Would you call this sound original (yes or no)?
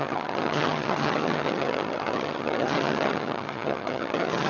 no